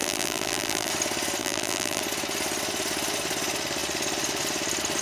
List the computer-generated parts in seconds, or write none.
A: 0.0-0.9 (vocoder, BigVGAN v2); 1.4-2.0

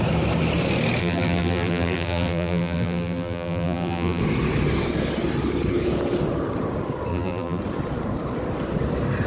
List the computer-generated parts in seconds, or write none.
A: 1.0-4.2 (vocoder, BigVGAN v2); 7.1-7.6

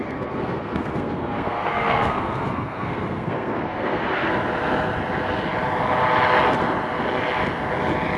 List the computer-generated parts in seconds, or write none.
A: 0.0-4.3 (codec, SNAC)